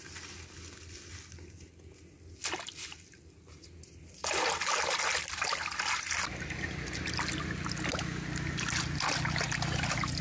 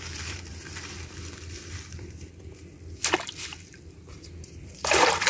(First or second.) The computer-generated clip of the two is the second